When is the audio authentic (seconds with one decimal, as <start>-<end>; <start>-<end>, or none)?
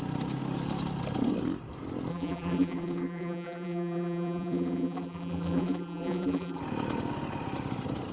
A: 0.0-2.1; 6.6-8.1